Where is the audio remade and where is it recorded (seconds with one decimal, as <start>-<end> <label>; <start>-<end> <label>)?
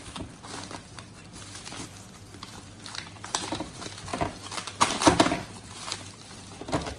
0.0-4.1 remade; 4.1-4.9 recorded; 4.9-7.0 remade